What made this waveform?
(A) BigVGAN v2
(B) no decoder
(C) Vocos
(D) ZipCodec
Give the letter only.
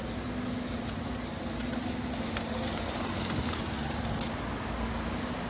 B